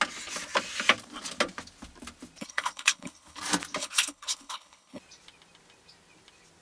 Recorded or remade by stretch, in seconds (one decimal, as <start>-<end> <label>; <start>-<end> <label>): 0.0-2.4 recorded; 2.4-3.4 remade; 3.4-3.8 recorded; 3.8-5.0 remade; 5.0-6.6 recorded